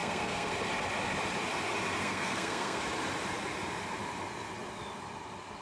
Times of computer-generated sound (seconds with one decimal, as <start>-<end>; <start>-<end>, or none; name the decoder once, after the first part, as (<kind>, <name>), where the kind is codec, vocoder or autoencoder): 0.0-0.5 (codec, SNAC); 2.0-2.8

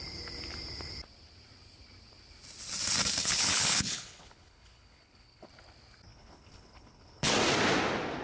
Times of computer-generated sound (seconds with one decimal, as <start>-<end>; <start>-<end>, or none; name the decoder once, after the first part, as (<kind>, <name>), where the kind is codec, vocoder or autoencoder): 3.2-5.5 (codec, HILCodec); 6.1-7.3

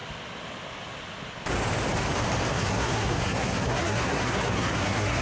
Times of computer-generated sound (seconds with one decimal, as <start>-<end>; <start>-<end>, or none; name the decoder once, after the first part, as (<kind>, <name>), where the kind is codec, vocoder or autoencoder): 2.5-5.2 (codec, SNAC)

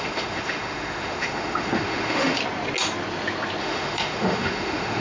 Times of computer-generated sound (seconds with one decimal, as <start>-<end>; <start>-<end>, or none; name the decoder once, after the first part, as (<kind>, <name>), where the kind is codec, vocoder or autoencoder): 0.0-2.4 (autoencoder, DAC-VAE); 3.6-5.0

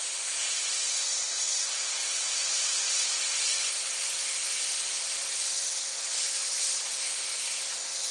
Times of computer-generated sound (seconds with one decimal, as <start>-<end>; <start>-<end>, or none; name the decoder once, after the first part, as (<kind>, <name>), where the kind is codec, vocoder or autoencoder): none

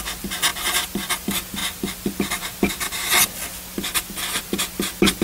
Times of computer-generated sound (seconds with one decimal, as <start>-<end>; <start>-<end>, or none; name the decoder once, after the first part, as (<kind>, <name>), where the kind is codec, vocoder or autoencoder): none

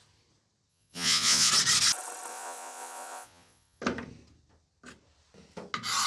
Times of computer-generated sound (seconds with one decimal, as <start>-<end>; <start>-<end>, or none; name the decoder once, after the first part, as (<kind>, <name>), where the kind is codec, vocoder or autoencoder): 0.7-1.5 (vocoder, Vocos); 2.3-3.8

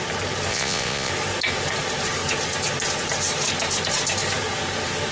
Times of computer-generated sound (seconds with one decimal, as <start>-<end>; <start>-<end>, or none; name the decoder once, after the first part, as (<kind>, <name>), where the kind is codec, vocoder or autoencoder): 0.5-1.1 (vocoder, Vocos)